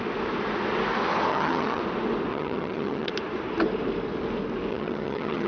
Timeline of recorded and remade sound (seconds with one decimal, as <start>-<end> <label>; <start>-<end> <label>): 0.0-1.3 recorded; 1.3-1.8 remade; 1.8-2.3 recorded; 2.3-3.1 remade; 3.1-4.7 recorded; 4.7-5.5 remade